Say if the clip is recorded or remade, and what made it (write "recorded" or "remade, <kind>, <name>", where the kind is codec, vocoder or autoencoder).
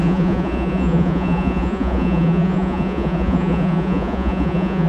remade, vocoder, Vocos